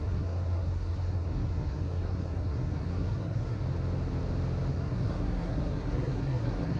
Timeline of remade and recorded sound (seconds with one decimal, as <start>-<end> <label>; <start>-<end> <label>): 0.0-3.6 remade; 3.6-4.7 recorded; 4.7-6.8 remade

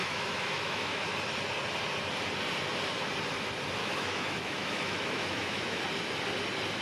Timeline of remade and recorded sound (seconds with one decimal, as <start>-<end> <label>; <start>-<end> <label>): 0.0-1.1 remade; 1.1-3.8 recorded; 3.8-5.8 remade; 5.8-6.8 recorded

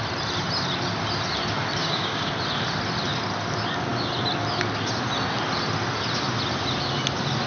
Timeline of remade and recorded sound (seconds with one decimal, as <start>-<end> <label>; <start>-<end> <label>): 0.0-1.8 recorded; 1.8-2.3 remade; 2.3-7.5 recorded

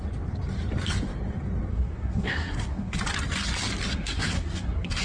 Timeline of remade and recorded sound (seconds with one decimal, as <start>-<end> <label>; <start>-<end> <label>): 0.0-1.7 recorded; 1.7-3.0 remade; 3.0-3.9 recorded; 3.9-5.0 remade

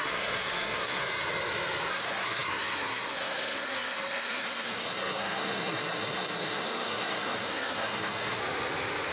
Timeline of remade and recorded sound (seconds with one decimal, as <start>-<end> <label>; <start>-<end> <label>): 0.0-1.0 remade; 1.0-1.9 recorded; 1.9-8.4 remade; 8.4-9.1 recorded

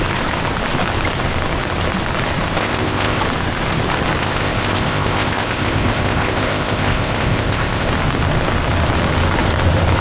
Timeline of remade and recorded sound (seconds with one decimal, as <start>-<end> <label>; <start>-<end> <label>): 0.0-2.6 recorded; 2.6-3.2 remade; 3.2-4.2 recorded; 4.2-7.9 remade; 7.9-10.0 recorded